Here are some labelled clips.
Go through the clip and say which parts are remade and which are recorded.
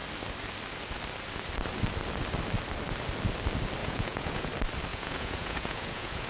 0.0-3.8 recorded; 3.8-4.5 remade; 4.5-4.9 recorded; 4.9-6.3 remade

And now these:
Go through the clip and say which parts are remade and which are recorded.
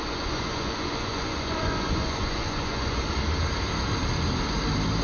0.0-3.0 remade; 3.0-5.0 recorded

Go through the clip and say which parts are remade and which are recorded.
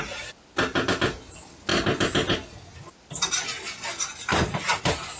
0.0-5.2 recorded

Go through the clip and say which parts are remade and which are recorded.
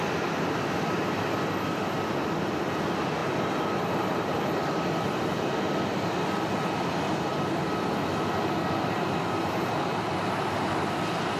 0.0-11.4 recorded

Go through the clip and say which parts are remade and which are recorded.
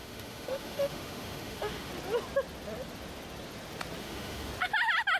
0.0-1.9 remade; 1.9-4.0 recorded; 4.0-4.5 remade; 4.5-5.2 recorded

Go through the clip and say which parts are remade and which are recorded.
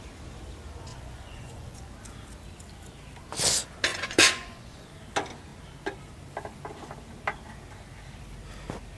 0.0-0.9 recorded; 0.9-1.9 remade; 1.9-3.9 recorded; 3.9-4.9 remade; 4.9-9.0 recorded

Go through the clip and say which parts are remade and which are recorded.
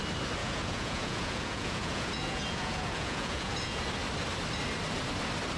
0.0-0.4 recorded; 0.4-3.8 remade; 3.8-5.6 recorded